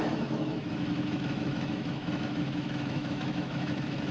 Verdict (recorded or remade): remade